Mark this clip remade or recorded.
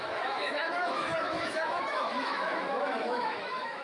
remade